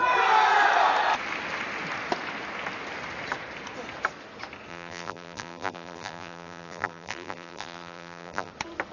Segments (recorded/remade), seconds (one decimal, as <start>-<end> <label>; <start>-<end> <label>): 0.0-4.7 recorded; 4.7-8.5 remade; 8.5-8.9 recorded